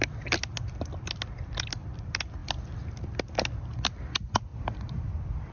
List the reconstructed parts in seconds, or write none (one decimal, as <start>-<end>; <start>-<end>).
4.5-5.0